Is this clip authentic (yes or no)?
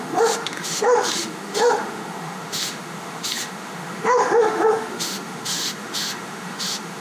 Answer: no